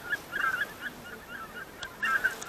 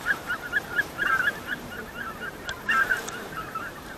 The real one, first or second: first